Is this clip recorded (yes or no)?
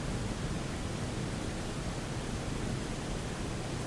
yes